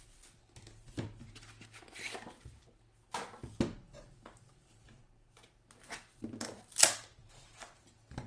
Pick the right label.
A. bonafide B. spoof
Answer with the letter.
A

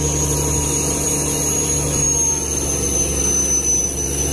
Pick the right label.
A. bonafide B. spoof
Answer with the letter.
A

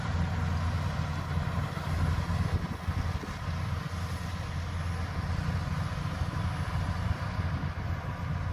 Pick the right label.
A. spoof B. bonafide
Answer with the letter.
B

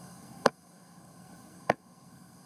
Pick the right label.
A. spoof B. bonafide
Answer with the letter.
A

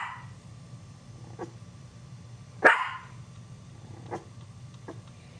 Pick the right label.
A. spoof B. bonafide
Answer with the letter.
B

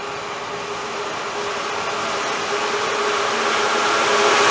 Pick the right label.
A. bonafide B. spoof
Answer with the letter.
A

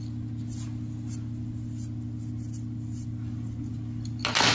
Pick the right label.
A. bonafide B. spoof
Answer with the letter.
A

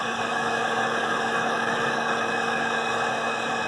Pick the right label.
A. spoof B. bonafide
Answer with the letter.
A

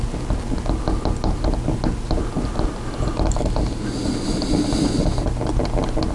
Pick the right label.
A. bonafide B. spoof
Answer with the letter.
A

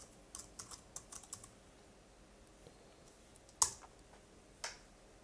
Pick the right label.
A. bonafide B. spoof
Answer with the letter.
A